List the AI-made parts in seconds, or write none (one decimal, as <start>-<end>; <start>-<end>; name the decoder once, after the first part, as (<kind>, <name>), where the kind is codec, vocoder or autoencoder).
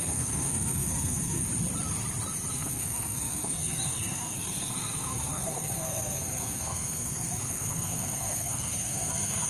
0.0-1.4 (codec, SNAC); 2.5-9.5